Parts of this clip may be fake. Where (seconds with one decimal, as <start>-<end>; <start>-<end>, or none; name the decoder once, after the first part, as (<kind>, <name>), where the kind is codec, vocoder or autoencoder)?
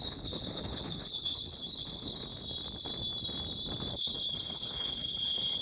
0.0-2.3 (codec, HILCodec); 3.9-5.6